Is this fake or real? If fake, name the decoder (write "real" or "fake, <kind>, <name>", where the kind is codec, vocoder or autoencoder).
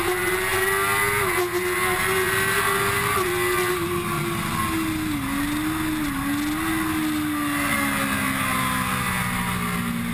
real